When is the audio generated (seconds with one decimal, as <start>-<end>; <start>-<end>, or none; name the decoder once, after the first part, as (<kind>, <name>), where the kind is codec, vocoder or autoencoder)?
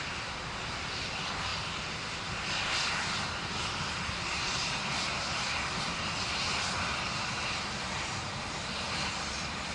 none